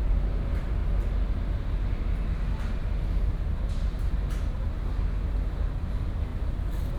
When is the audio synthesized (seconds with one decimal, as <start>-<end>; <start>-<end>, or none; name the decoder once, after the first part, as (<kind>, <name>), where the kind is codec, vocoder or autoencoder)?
none

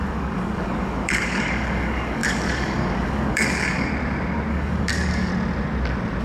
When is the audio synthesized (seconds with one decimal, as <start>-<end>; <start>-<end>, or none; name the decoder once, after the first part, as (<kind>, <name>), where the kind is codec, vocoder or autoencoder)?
0.0-3.9 (codec, DAC); 4.5-5.3

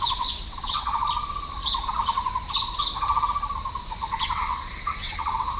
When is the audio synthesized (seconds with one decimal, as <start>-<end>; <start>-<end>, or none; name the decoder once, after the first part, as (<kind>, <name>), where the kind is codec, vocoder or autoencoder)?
0.0-1.0 (vocoder, WaveNeXt); 4.2-5.6

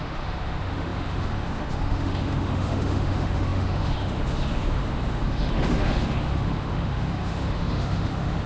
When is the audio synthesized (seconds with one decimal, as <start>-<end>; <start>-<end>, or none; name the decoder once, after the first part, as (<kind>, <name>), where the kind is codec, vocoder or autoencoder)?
0.0-8.5 (autoencoder, DAC-VAE)

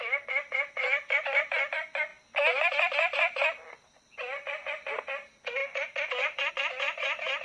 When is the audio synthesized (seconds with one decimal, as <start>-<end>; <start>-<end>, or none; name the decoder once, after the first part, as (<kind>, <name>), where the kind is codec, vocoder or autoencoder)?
none

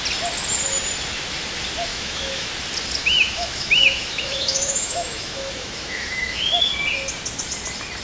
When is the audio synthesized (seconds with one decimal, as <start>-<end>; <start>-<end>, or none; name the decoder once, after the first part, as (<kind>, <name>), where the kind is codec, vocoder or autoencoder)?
1.9-2.5 (autoencoder, DAC-VAE); 3.0-6.7

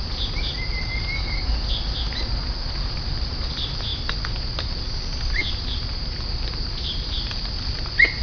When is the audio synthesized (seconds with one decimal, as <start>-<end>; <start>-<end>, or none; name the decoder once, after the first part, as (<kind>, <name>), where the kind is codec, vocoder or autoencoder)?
none